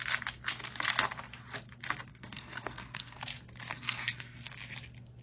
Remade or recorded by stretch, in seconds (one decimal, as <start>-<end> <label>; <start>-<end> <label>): 0.0-2.1 recorded; 2.1-3.2 remade; 3.2-3.7 recorded; 3.7-4.5 remade; 4.5-5.2 recorded